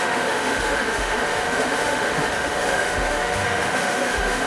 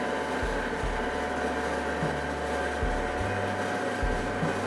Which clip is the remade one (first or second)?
first